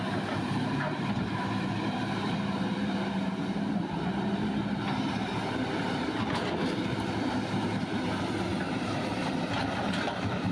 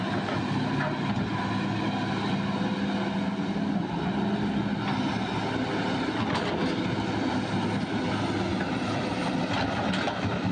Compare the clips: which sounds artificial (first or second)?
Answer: first